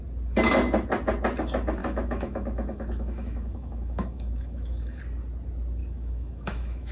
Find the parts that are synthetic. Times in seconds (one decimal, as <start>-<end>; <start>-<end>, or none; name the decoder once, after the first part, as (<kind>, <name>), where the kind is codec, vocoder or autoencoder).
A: 1.8-5.0 (autoencoder, DAC-VAE); 5.8-6.9

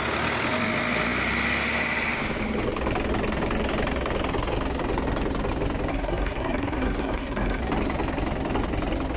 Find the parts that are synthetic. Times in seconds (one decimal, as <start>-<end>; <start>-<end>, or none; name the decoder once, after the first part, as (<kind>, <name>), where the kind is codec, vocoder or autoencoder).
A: 5.9-7.6 (codec, SNAC)

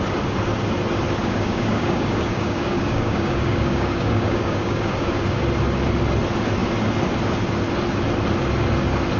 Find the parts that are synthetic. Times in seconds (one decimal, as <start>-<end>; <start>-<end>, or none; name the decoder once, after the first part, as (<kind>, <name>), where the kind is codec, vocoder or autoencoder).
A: 1.2-5.4 (codec, DAC)

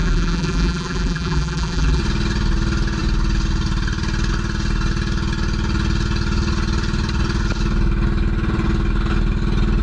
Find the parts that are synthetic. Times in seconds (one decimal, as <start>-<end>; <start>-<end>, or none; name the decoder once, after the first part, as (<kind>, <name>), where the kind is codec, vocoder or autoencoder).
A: 0.0-2.0 (vocoder, BigVGAN v2)

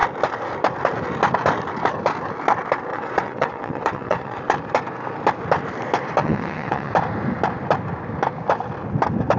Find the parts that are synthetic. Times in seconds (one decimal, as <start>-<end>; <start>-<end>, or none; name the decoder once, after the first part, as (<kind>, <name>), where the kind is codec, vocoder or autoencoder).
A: 2.9-4.4 (vocoder, WaveNeXt); 6.2-6.9

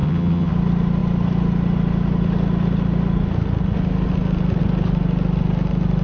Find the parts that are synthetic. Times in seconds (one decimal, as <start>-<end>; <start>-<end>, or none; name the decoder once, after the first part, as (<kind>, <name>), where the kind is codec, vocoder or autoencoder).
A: 0.0-0.5 (vocoder, HiFi-GAN)